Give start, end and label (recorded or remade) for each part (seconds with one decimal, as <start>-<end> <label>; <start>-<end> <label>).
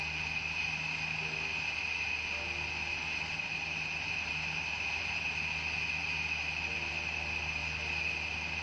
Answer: 0.0-8.6 recorded